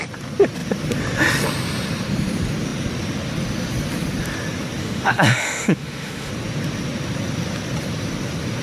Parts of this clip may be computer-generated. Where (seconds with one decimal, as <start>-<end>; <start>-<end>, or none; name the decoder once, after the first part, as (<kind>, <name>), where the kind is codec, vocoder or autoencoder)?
4.8-6.3 (autoencoder, DAC-VAE)